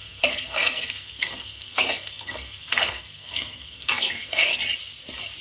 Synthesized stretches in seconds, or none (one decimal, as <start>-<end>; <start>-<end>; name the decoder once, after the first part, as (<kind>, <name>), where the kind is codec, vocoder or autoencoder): 0.0-4.5 (codec, SNAC)